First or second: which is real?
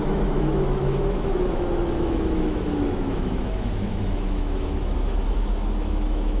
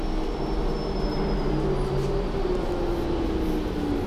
second